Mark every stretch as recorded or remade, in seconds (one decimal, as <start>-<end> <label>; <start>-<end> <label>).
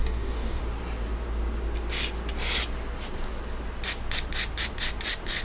0.0-0.6 remade; 0.6-5.4 recorded